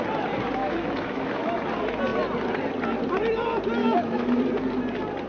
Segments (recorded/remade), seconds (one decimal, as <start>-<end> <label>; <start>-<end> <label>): 0.0-0.6 recorded; 0.6-1.6 remade; 1.6-3.8 recorded; 3.8-4.4 remade; 4.4-5.3 recorded